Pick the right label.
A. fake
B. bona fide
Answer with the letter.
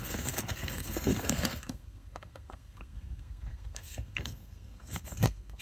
A